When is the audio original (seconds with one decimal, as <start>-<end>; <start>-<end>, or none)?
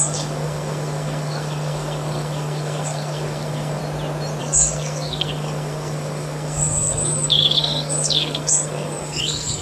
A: 3.8-4.4